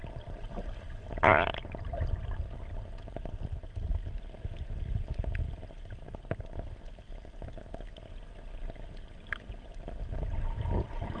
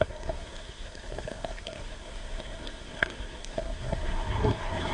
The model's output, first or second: second